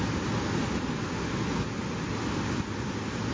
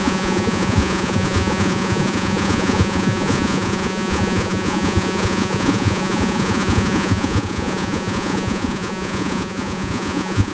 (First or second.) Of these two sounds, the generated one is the second